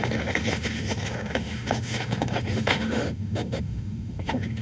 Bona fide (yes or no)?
no